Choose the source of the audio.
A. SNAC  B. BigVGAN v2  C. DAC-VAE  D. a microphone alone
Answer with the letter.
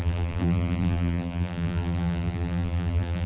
B